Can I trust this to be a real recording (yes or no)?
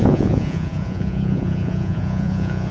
no